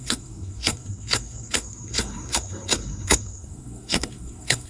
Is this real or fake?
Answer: fake